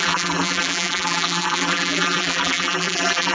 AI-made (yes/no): yes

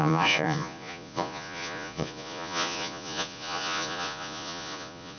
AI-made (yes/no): yes